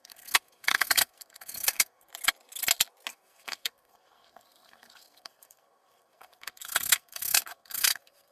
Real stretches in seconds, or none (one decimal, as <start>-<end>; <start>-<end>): 2.1-3.1